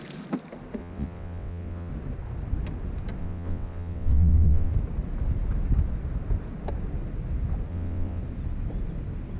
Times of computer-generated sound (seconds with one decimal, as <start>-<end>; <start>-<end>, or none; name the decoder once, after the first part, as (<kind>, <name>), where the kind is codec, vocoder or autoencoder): 0.8-1.9 (vocoder, WaveNeXt); 3.2-4.7; 7.7-8.2